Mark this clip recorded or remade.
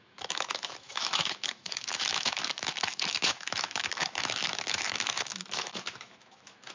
remade